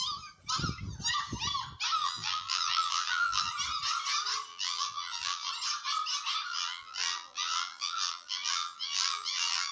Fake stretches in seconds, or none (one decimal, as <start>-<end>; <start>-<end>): 2.0-3.5; 4.5-5.5; 6.5-9.7